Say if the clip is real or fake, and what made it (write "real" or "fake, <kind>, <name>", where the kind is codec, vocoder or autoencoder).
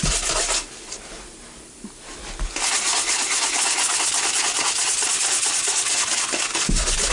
real